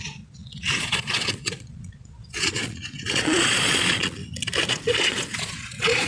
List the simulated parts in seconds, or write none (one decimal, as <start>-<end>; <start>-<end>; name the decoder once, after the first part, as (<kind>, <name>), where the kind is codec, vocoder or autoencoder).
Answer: 0.0-4.2 (vocoder, Vocos); 4.7-6.1